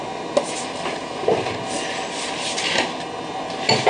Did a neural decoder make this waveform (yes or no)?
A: no